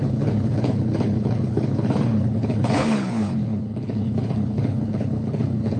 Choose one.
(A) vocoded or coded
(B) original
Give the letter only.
A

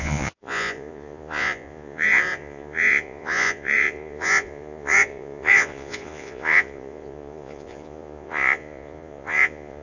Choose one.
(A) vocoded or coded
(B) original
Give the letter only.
A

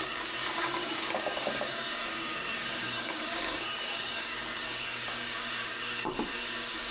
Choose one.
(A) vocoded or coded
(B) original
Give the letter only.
A